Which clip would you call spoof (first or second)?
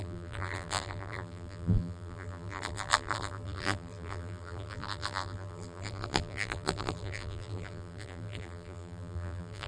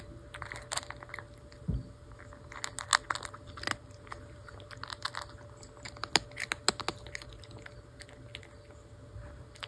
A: first